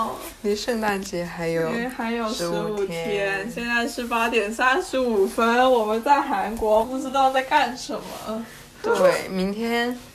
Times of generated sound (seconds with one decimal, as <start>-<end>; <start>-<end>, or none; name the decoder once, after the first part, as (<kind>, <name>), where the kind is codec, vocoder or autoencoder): 6.8-7.4 (codec, SNAC)